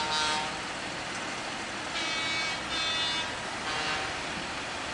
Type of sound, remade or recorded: recorded